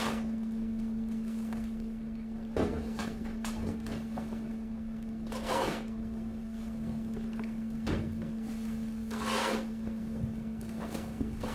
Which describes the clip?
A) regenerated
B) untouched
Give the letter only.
A